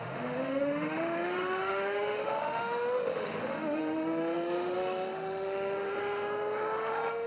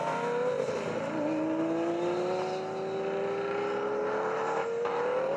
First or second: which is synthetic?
first